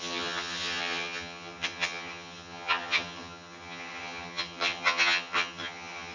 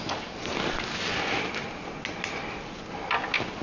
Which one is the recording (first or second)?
second